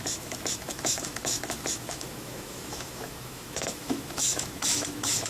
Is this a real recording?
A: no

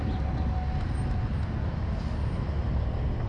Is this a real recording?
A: yes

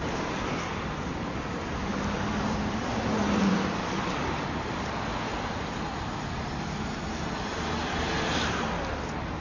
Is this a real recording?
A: no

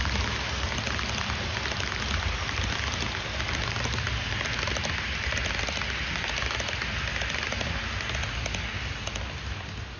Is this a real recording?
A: yes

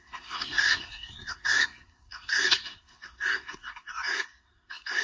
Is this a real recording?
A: no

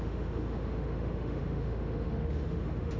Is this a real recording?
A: no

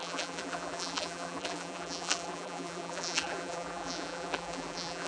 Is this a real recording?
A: no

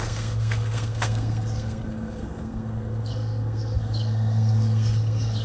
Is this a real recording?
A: no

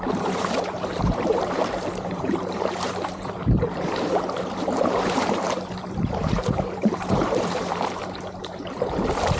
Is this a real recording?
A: no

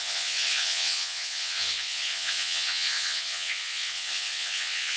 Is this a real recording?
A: no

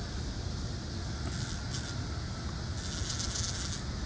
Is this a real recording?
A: yes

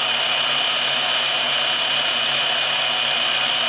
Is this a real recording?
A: yes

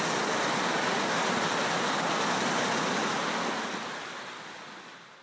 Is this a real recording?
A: yes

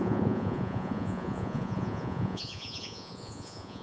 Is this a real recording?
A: no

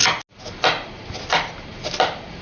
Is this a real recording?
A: yes